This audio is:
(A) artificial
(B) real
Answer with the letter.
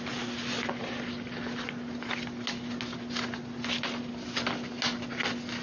B